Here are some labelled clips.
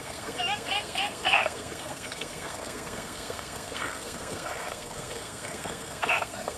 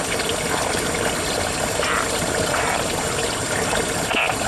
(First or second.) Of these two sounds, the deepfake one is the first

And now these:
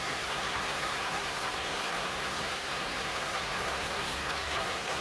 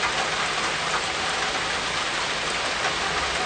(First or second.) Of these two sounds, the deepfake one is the first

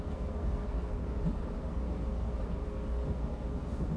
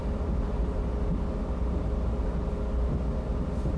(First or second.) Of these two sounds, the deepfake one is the first